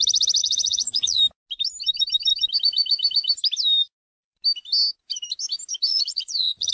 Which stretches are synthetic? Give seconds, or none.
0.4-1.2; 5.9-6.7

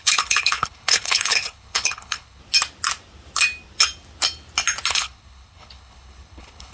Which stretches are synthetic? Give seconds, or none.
0.0-2.4; 4.9-6.7

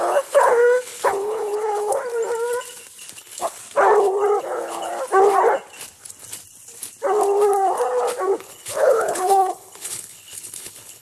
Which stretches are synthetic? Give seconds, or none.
0.0-2.0; 3.2-3.6; 4.4-4.9; 8.4-11.0

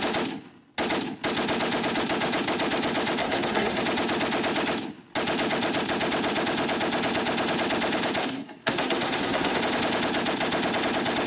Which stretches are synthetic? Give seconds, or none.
3.2-3.8; 8.2-9.6

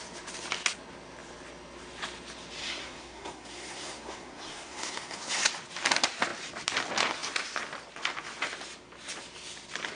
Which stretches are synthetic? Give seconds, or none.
2.6-5.5

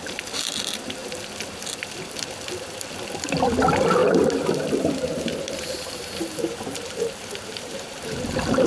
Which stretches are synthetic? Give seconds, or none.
4.0-8.7

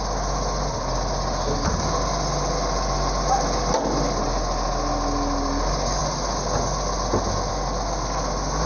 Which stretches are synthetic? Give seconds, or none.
none

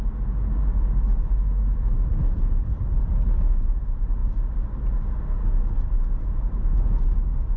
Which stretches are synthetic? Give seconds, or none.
none